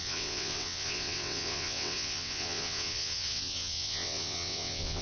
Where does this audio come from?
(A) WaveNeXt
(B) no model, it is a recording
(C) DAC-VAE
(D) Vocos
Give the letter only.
A